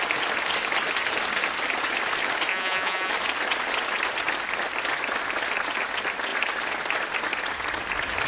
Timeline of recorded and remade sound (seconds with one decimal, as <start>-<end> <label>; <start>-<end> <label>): 0.0-2.5 recorded; 2.5-3.1 remade; 3.1-8.3 recorded